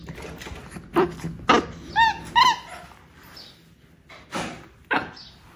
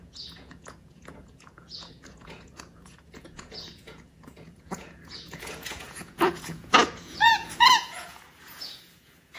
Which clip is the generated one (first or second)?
second